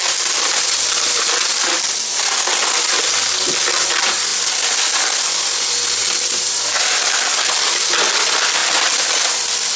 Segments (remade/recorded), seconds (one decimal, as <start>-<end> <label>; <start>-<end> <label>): 0.0-9.8 recorded